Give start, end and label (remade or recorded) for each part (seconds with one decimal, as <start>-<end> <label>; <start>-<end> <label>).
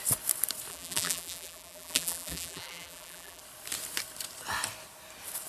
0.0-0.7 recorded; 0.7-3.4 remade; 3.4-5.5 recorded